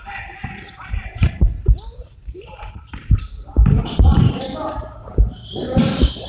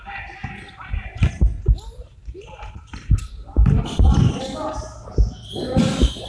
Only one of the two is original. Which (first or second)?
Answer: second